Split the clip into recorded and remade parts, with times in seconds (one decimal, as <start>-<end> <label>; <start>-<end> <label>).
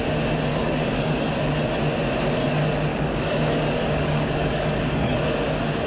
0.0-0.5 recorded; 0.5-1.3 remade; 1.3-2.9 recorded; 2.9-5.2 remade; 5.2-5.9 recorded